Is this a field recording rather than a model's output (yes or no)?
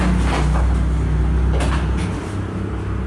yes